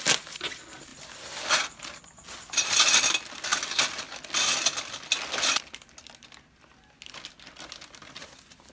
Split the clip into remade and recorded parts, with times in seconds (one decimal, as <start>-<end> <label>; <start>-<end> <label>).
0.0-8.7 recorded